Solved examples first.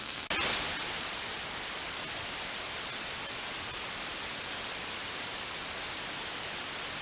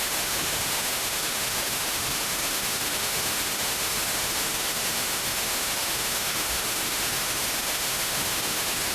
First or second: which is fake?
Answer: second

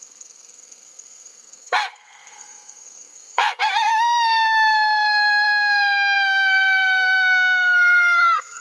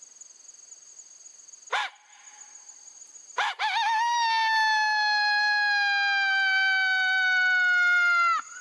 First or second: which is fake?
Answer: first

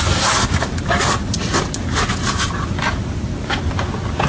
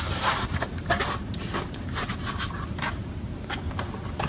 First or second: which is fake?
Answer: second